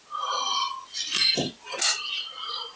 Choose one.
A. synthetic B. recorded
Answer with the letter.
B